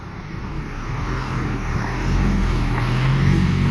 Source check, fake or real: fake